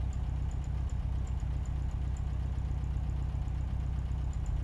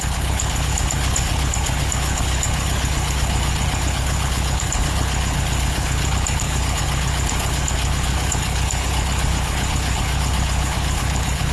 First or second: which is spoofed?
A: second